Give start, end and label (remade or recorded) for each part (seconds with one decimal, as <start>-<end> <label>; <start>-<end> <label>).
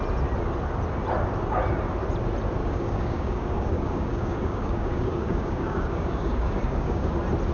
0.0-2.6 recorded; 2.6-7.1 remade; 7.1-7.5 recorded